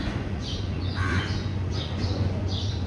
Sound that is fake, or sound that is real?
fake